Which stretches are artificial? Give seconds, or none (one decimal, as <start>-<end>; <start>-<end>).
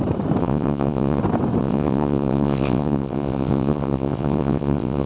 0.4-1.2; 1.6-5.1